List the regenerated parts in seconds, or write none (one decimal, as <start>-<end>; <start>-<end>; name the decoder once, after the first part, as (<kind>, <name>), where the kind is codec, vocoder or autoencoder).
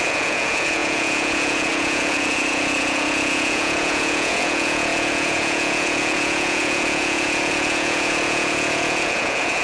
0.0-9.6 (vocoder, Vocos)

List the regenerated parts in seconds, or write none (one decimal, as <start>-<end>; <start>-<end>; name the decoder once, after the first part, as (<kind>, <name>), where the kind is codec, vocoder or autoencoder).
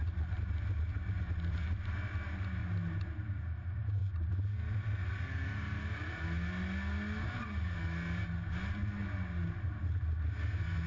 none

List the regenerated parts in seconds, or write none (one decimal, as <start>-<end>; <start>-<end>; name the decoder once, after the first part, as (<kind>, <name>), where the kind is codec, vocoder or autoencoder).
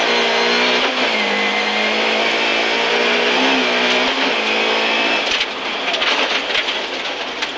none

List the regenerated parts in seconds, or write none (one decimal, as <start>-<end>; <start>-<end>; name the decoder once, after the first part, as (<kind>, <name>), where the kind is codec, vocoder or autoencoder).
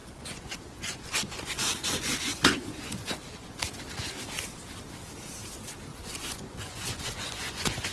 0.0-3.6 (vocoder, Vocos); 5.9-7.9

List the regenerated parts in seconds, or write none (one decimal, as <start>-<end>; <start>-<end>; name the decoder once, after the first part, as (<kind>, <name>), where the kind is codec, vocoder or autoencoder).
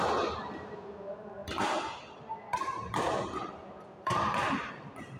none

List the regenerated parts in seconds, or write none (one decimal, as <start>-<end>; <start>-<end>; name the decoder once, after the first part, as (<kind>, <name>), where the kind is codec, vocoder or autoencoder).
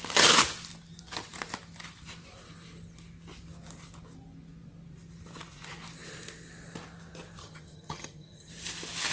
7.4-8.5 (vocoder, HiFi-GAN)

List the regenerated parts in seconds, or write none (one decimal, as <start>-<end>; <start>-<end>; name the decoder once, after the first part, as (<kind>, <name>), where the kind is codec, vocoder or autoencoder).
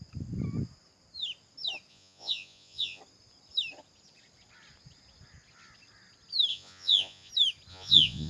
1.9-3.0 (vocoder, Vocos); 6.5-7.3; 7.7-8.3